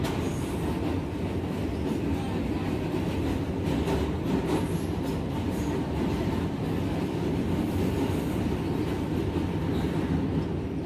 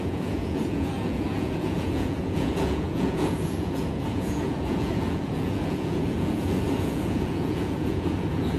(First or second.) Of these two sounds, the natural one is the first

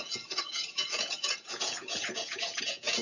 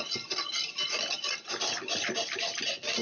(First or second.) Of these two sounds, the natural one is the second